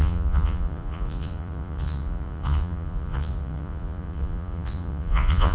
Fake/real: fake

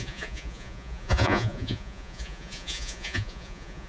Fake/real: fake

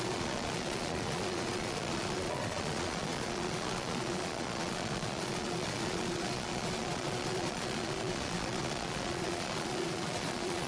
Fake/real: fake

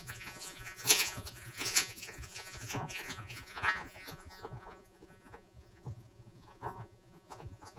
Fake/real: fake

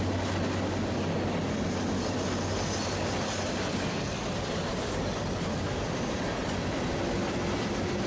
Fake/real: real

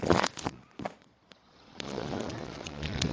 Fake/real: fake